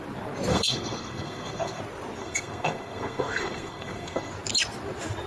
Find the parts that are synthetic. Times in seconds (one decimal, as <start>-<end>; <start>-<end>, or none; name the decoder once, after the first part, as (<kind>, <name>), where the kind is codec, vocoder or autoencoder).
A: 0.5-1.8 (codec, SNAC); 2.2-4.3